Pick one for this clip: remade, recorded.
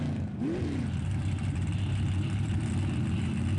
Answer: recorded